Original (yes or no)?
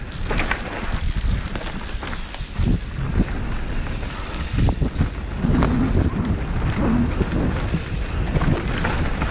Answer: yes